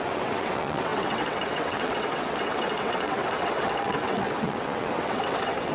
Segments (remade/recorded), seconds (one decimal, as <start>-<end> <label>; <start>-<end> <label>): 0.0-5.7 remade